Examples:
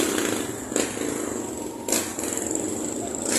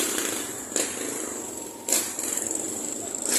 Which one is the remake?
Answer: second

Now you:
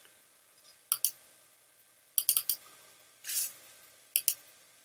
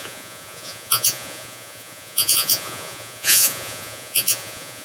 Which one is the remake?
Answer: second